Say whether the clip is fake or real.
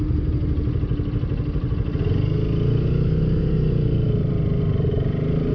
real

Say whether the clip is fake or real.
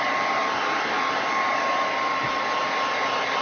real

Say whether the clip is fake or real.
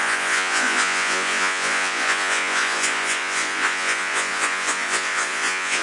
fake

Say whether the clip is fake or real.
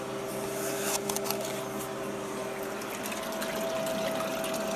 real